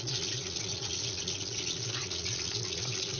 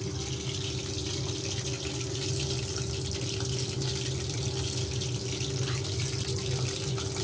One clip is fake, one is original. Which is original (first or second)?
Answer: second